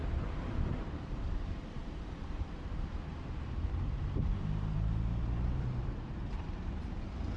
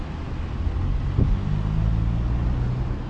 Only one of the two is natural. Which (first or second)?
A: second